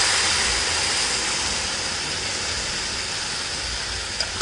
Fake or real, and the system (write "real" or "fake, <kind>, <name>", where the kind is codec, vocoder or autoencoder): real